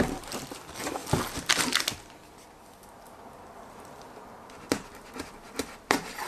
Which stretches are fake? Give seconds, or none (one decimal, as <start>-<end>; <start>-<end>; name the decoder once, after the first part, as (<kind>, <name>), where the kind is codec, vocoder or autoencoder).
none